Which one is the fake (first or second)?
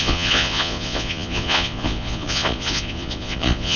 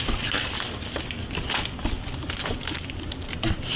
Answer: first